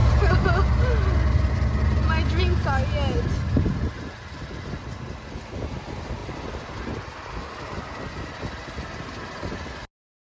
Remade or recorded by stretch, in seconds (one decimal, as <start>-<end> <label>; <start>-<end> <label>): 0.0-10.4 recorded

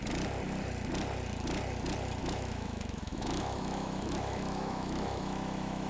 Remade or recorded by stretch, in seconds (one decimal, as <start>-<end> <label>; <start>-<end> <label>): 0.0-2.2 recorded; 2.2-5.9 remade

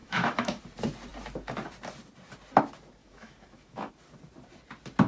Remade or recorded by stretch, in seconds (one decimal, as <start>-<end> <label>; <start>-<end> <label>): 0.0-0.6 remade; 0.6-3.0 recorded; 3.0-3.9 remade; 3.9-5.1 recorded

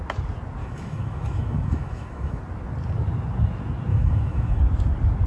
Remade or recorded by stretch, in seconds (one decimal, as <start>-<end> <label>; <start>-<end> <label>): 0.0-0.6 recorded; 0.6-2.4 remade; 2.4-3.9 recorded; 3.9-4.6 remade; 4.6-5.3 recorded

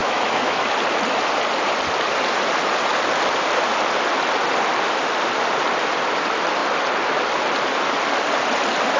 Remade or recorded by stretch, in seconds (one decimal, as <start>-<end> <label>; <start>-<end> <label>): 0.0-0.7 remade; 0.7-9.0 recorded

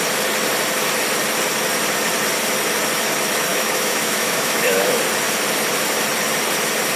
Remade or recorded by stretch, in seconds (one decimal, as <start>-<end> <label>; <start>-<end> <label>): 0.0-3.5 recorded; 3.5-5.0 remade; 5.0-7.0 recorded

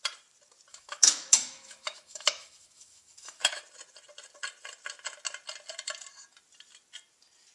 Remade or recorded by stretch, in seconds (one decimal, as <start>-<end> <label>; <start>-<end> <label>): 0.0-0.7 recorded; 0.7-3.6 remade; 3.6-7.5 recorded

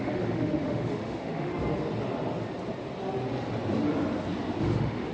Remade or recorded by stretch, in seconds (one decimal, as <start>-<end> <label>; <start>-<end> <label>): 0.0-1.5 remade; 1.5-4.6 recorded; 4.6-5.1 remade